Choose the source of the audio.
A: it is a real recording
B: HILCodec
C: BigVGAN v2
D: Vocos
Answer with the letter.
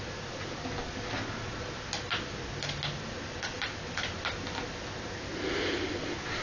A